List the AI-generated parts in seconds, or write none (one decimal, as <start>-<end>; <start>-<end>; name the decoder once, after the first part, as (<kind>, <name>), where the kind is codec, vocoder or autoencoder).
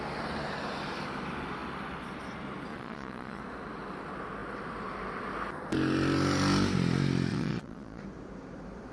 2.7-3.4 (vocoder, Vocos); 7.3-8.0